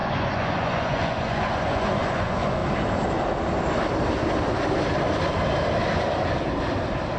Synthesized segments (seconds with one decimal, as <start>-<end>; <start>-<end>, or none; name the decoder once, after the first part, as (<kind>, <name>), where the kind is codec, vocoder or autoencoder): 0.0-2.6 (vocoder, Vocos)